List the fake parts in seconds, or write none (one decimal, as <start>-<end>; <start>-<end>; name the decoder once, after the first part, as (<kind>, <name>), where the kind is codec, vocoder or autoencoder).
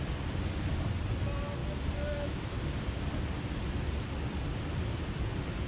1.6-2.7 (autoencoder, DAC-VAE)